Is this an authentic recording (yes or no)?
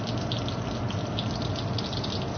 yes